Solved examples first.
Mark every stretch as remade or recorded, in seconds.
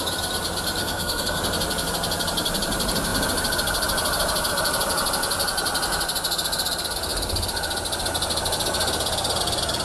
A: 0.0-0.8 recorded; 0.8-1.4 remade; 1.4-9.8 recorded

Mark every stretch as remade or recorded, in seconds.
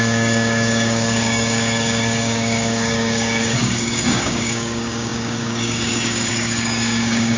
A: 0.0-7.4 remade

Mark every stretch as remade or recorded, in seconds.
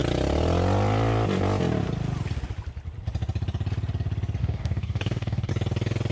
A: 0.0-4.4 recorded; 4.4-5.5 remade; 5.5-6.1 recorded